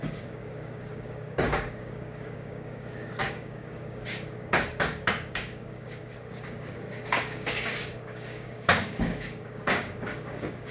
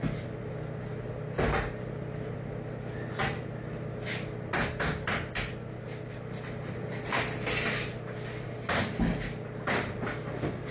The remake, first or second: first